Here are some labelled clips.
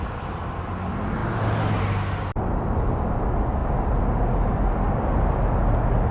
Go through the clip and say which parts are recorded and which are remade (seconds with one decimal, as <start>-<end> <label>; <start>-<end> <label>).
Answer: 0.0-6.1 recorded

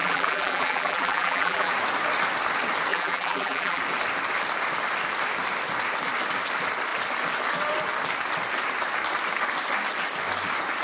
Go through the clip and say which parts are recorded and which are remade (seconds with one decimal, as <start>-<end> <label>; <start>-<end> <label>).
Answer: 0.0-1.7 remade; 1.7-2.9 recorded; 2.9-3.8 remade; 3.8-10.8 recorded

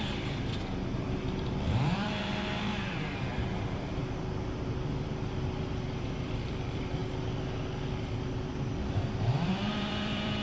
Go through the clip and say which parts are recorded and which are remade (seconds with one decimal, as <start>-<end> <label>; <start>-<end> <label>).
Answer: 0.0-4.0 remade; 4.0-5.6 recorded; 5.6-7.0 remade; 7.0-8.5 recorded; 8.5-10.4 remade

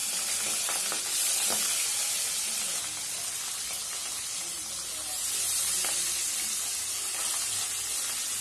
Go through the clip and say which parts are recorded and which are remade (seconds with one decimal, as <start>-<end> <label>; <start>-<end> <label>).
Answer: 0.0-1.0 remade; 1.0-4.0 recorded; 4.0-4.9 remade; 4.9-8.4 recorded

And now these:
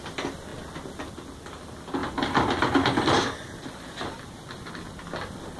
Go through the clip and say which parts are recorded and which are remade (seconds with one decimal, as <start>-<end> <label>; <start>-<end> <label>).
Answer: 0.0-0.5 remade; 0.5-1.5 recorded; 1.5-5.6 remade

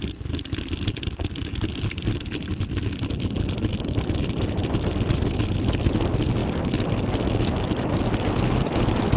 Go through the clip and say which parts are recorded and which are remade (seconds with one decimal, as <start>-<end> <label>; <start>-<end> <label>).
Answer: 0.0-6.4 remade; 6.4-8.3 recorded; 8.3-9.2 remade